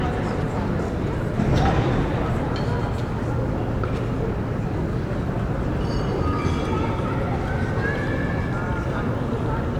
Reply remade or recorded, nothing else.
recorded